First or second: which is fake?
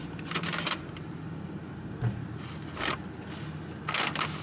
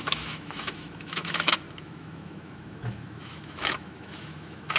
second